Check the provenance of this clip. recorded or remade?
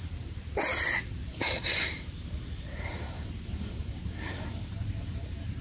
remade